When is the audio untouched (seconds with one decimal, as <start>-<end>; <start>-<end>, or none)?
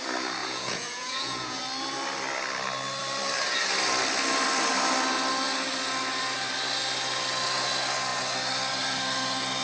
0.0-0.4; 1.6-9.6